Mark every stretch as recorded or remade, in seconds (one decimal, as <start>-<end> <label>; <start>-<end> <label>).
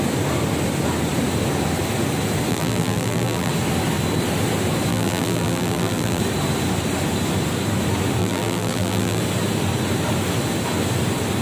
0.0-2.5 recorded; 2.5-3.5 remade; 3.5-4.9 recorded; 4.9-6.2 remade; 6.2-8.2 recorded; 8.2-9.2 remade; 9.2-11.4 recorded